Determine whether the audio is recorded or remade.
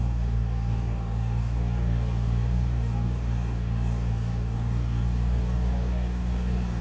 remade